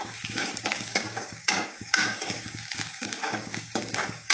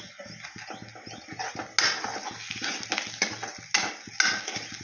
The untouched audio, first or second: second